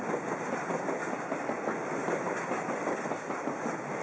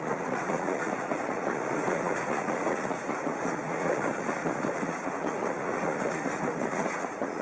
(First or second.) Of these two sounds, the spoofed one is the second